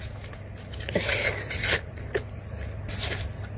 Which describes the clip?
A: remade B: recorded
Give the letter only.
B